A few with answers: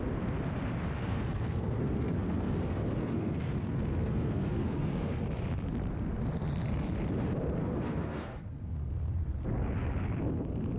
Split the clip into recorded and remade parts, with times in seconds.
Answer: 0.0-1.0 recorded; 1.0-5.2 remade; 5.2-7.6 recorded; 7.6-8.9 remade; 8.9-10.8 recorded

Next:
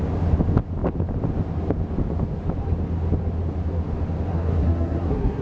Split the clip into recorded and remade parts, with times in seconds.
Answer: 0.0-4.3 recorded; 4.3-5.4 remade